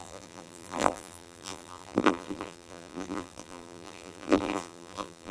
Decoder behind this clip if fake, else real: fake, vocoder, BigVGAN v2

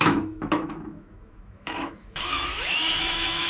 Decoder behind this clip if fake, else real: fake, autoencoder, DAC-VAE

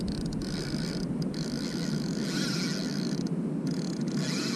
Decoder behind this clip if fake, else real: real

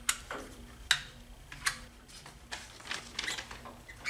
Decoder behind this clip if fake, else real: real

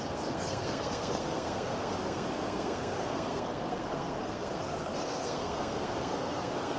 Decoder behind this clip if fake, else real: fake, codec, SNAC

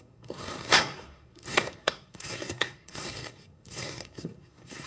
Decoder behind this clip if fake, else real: fake, codec, SNAC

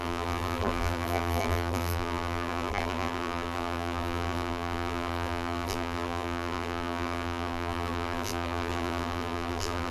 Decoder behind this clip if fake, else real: fake, vocoder, BigVGAN v2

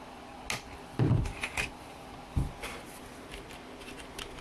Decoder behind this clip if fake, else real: real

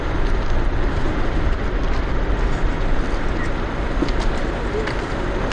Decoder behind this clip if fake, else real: real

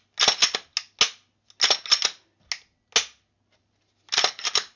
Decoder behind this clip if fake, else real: real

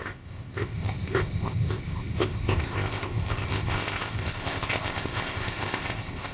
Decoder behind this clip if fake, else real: fake, codec, ZipCodec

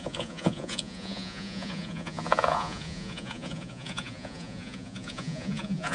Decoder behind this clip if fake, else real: fake, vocoder, Vocos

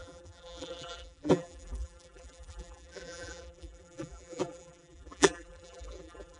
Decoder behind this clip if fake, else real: fake, vocoder, BigVGAN v2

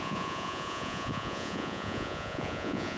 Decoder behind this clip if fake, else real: fake, vocoder, Vocos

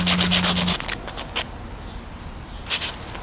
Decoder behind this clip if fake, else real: real